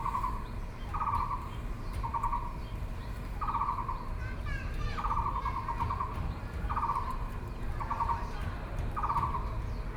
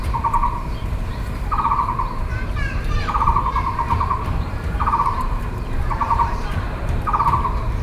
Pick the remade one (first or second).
second